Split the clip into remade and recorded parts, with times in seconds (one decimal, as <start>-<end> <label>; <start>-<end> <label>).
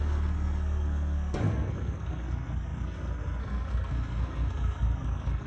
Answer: 0.0-5.5 remade